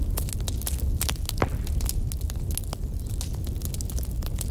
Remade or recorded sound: recorded